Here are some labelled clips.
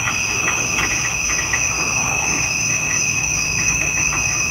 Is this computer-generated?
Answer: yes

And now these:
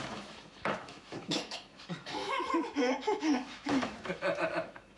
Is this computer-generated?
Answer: yes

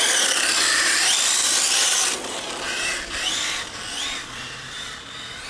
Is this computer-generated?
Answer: yes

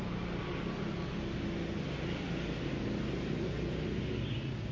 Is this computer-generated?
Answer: no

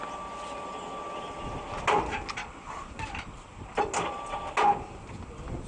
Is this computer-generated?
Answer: no